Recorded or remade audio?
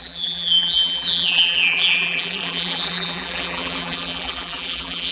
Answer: remade